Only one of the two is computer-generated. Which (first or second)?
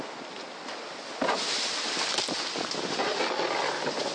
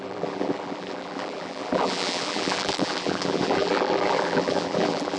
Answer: second